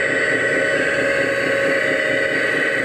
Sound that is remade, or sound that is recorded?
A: recorded